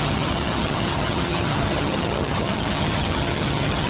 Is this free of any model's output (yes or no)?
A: no